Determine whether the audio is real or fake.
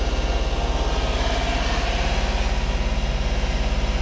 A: real